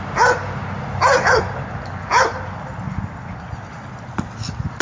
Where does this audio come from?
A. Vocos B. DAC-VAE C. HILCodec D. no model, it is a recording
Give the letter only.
D